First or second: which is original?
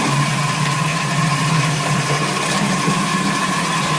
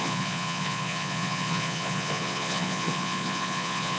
first